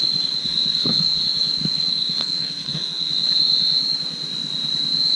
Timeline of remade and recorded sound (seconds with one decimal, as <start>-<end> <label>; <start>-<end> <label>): 0.0-0.4 recorded; 0.4-1.2 remade; 1.2-1.9 recorded; 1.9-3.1 remade; 3.1-5.2 recorded